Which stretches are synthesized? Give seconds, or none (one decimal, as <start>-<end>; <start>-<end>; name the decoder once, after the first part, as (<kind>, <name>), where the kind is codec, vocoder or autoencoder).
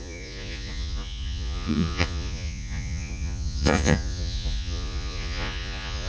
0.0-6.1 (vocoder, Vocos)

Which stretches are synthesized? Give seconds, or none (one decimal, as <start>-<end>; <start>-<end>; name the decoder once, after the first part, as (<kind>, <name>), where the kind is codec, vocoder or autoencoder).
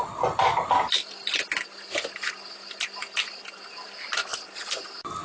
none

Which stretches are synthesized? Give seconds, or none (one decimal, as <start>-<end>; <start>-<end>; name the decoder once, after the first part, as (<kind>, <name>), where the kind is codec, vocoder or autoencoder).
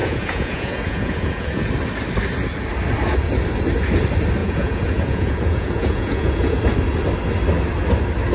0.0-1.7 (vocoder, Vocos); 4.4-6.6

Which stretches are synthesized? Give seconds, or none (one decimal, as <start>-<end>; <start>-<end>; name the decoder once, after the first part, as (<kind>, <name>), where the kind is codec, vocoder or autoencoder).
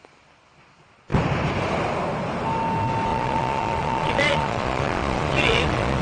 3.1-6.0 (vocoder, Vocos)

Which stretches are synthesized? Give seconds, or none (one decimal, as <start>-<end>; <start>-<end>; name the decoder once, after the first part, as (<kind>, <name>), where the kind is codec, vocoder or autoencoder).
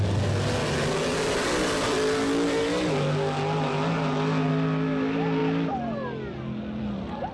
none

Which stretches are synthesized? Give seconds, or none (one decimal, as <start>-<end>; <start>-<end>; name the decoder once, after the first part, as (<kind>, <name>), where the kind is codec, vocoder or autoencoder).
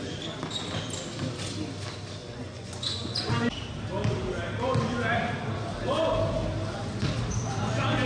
2.2-3.3 (vocoder, Vocos)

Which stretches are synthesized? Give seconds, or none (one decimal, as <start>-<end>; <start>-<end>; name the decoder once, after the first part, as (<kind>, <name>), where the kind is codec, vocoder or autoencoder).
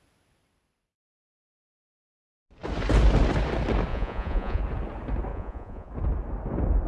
3.9-4.6 (vocoder, Vocos); 5.3-5.9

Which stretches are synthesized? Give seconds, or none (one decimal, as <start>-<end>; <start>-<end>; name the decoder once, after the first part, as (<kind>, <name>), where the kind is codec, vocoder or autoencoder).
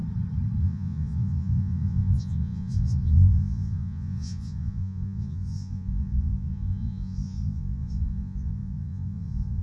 0.6-9.6 (vocoder, Vocos)